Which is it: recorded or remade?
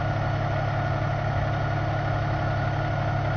recorded